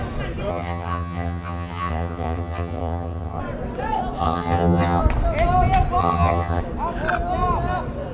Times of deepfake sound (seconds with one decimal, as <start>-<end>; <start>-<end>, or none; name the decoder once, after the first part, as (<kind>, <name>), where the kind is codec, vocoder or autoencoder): 0.5-3.4 (vocoder, HiFi-GAN); 4.2-5.0; 6.0-6.6